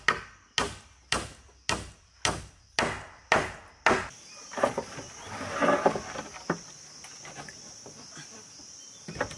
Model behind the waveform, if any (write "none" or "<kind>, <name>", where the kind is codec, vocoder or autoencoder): none